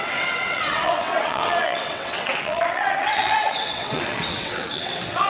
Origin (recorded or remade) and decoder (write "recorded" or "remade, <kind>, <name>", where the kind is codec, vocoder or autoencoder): remade, vocoder, WaveNeXt